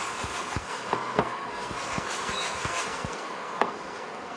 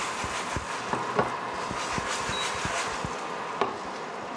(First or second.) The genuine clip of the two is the second